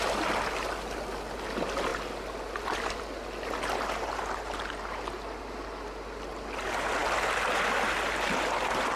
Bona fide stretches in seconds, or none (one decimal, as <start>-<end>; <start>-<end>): 0.0-9.0